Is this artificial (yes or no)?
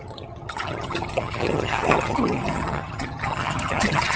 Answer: yes